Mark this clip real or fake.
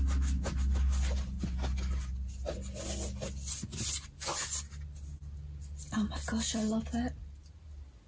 real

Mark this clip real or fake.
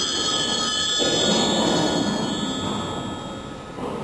real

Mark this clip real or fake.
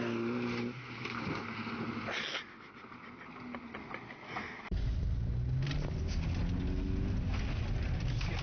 real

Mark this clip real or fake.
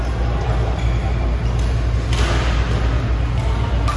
real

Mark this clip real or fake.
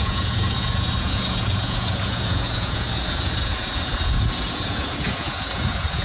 fake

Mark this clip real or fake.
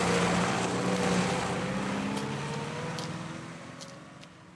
real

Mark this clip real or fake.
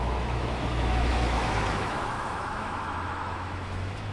fake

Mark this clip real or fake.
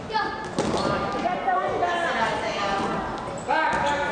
real